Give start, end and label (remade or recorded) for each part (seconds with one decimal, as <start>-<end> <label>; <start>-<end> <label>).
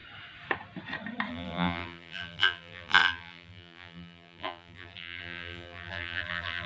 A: 0.0-1.3 recorded; 1.3-6.7 remade